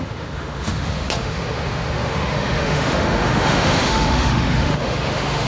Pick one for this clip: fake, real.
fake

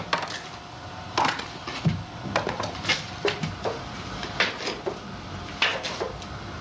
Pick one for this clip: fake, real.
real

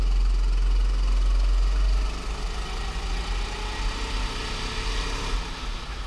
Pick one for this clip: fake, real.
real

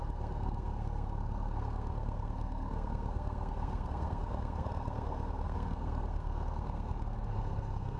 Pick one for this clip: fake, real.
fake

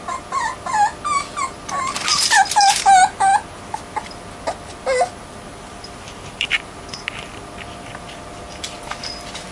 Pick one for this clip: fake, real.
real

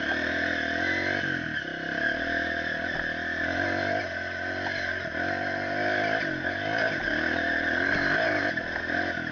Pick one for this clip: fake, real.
real